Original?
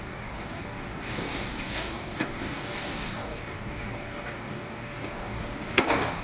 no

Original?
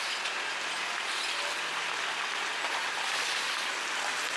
yes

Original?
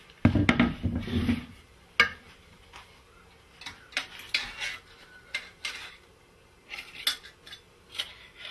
yes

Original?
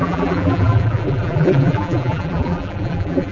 no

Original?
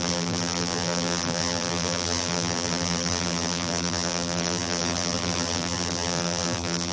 no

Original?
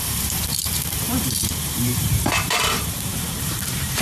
no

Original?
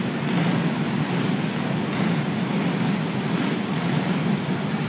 yes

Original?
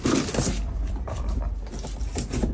no